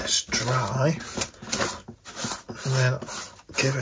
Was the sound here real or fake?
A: real